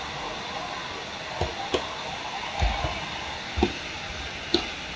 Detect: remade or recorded recorded